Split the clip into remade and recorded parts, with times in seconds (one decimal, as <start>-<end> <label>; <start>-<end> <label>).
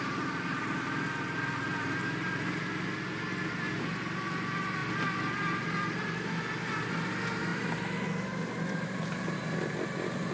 0.0-10.3 recorded